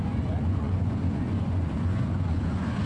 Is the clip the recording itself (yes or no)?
no